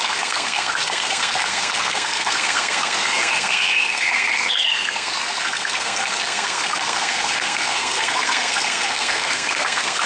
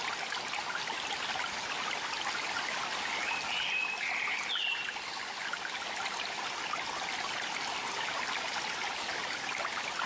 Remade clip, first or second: first